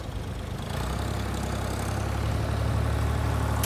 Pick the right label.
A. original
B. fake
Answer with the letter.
A